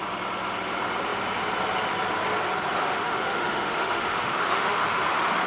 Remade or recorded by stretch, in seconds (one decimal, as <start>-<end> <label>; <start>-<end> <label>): 0.0-2.8 recorded; 2.8-5.1 remade; 5.1-5.5 recorded

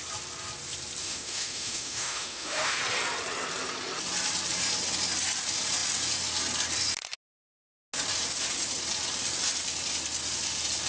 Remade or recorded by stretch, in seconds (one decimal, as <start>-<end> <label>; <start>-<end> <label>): 0.0-1.0 recorded; 1.0-2.8 remade; 2.8-10.9 recorded

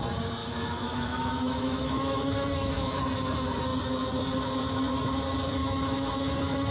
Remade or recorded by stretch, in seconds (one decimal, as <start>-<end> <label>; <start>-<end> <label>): 0.0-0.4 recorded; 0.4-3.0 remade; 3.0-5.6 recorded; 5.6-6.7 remade

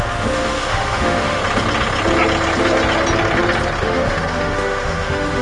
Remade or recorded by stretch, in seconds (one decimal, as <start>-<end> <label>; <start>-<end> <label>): 0.0-1.4 remade; 1.4-3.8 recorded; 3.8-5.4 remade